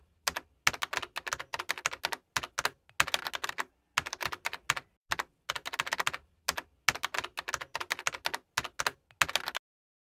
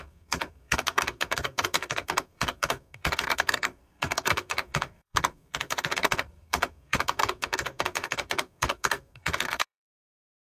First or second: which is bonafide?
first